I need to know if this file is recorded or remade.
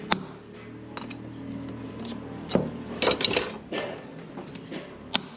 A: recorded